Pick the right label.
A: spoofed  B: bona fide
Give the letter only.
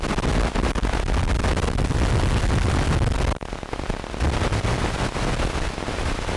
B